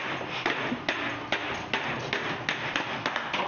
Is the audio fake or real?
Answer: real